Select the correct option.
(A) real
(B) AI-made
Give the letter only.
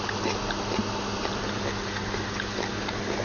A